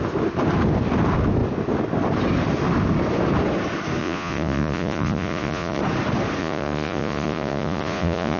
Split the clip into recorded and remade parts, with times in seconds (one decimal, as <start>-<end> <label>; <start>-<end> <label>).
0.0-4.0 recorded; 4.0-5.8 remade; 5.8-6.4 recorded; 6.4-8.4 remade